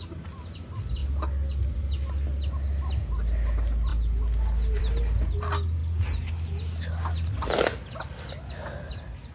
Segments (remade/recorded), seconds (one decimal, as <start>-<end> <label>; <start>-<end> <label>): 0.0-9.3 recorded